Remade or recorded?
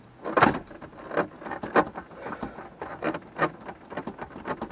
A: recorded